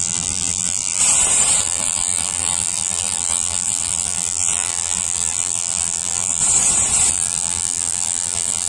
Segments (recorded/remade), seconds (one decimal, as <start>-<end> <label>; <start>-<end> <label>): 0.0-1.0 remade; 1.0-1.6 recorded; 1.6-6.4 remade; 6.4-7.1 recorded; 7.1-8.7 remade